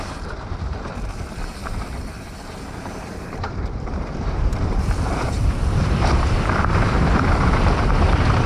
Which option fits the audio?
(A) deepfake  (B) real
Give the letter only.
A